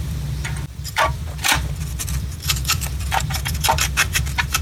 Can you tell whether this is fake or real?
fake